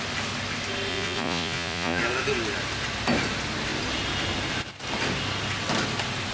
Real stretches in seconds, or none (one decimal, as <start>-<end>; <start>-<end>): 0.0-0.9; 2.0-6.3